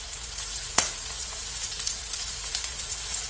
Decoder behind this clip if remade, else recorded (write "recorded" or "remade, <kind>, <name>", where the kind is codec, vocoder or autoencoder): remade, vocoder, Vocos